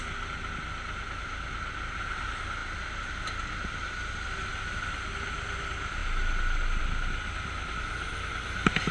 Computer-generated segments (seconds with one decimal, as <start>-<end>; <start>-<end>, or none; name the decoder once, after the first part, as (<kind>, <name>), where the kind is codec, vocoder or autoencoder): none